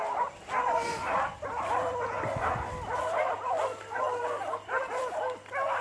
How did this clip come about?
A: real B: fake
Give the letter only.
A